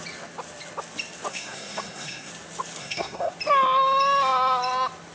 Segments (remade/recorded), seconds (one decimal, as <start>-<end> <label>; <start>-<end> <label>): 0.0-1.3 recorded; 1.3-2.3 remade; 2.3-2.8 recorded; 2.8-3.3 remade; 3.3-5.1 recorded